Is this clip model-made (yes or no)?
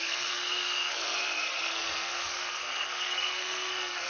yes